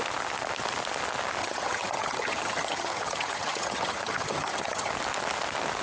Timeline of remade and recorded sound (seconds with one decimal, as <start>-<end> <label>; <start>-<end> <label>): 0.0-1.4 recorded; 1.4-4.9 remade; 4.9-5.8 recorded